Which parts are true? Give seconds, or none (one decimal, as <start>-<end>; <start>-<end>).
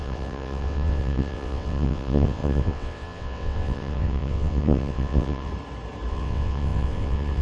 5.5-6.1